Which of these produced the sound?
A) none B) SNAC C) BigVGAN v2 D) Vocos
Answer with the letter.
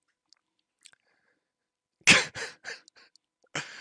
A